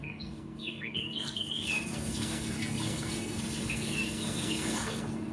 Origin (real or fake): fake